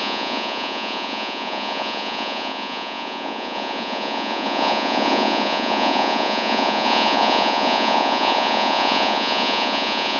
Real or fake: fake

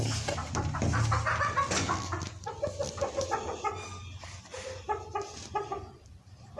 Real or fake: real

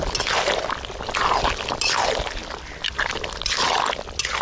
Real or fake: real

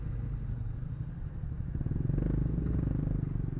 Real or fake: real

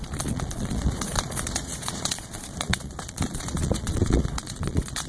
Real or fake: fake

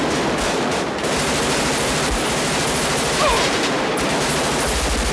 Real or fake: real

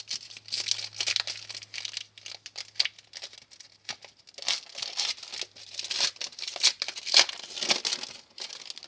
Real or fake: real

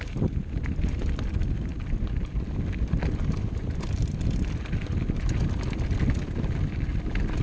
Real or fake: real